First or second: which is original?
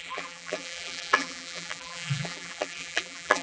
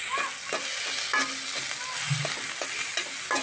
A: second